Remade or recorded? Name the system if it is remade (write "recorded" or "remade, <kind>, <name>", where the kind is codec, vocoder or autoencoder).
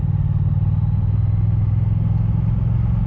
recorded